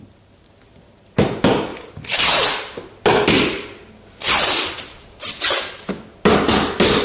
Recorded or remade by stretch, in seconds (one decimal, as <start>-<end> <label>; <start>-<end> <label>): 0.0-7.0 recorded